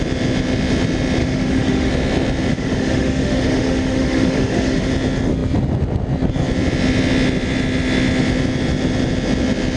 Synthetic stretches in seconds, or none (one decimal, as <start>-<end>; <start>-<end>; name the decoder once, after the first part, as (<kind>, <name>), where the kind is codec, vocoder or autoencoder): 1.2-1.9 (autoencoder, DAC-VAE); 2.5-4.9